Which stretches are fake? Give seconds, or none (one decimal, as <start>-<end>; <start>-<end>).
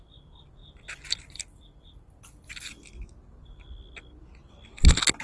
none